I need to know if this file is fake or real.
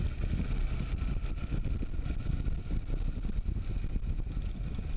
real